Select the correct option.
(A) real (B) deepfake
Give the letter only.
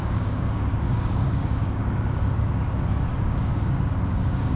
B